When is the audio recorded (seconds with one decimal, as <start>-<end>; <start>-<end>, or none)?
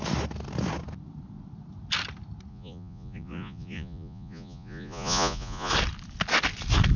0.0-2.5; 5.7-7.0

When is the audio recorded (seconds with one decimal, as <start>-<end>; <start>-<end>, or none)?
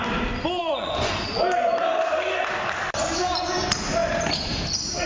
0.0-0.6; 1.2-5.1